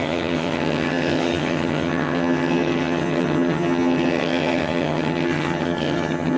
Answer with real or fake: fake